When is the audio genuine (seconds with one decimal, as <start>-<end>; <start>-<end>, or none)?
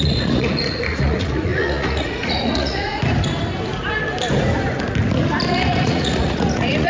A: 3.0-5.5